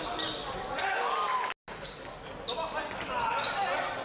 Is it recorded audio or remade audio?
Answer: recorded